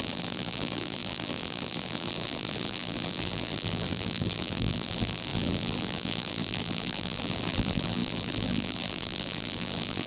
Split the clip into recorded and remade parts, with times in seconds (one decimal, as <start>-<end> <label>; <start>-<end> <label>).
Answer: 0.0-10.1 remade